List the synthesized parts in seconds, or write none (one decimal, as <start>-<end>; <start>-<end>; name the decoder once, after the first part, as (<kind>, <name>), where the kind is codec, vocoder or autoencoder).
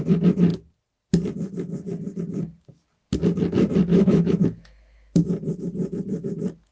3.9-5.3 (autoencoder, DAC-VAE)